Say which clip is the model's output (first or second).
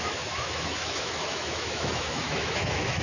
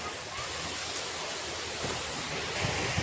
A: first